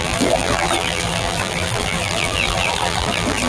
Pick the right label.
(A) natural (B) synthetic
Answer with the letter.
B